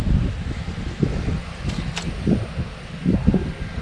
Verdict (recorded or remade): recorded